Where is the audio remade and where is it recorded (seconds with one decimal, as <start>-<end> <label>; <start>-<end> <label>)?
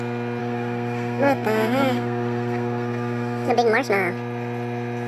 0.0-0.4 recorded; 0.4-3.5 remade; 3.5-5.1 recorded